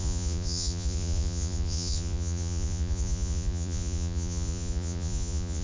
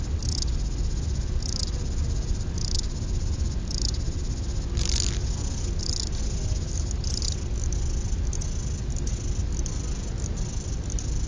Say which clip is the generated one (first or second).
first